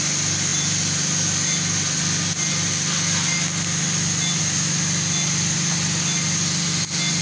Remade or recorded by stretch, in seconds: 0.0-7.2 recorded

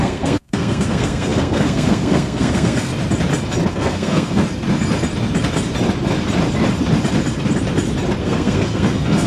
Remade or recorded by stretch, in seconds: 0.0-2.9 remade; 2.9-3.7 recorded; 3.7-4.4 remade; 4.4-8.2 recorded; 8.2-9.3 remade

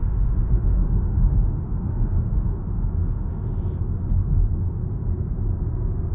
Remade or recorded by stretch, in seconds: 0.0-4.8 remade; 4.8-6.1 recorded

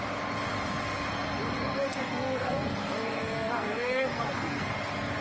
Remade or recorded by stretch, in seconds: 0.0-1.6 recorded; 1.6-4.7 remade; 4.7-5.2 recorded

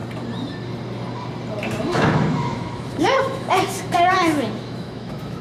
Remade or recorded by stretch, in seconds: 0.0-1.9 recorded; 1.9-5.4 remade

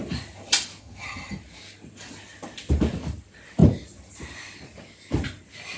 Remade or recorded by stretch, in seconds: 0.0-0.8 recorded; 0.8-1.4 remade; 1.4-5.8 recorded

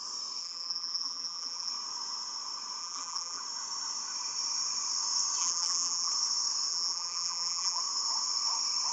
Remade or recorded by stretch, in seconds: 0.0-0.4 recorded; 0.4-1.7 remade; 1.7-2.8 recorded; 2.8-3.4 remade; 3.4-5.4 recorded; 5.4-6.1 remade; 6.1-6.7 recorded; 6.7-7.8 remade; 7.8-8.9 recorded

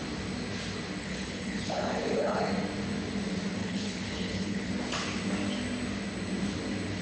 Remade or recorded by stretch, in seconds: 0.0-1.0 recorded; 1.0-2.5 remade; 2.5-3.6 recorded; 3.6-4.7 remade; 4.7-7.0 recorded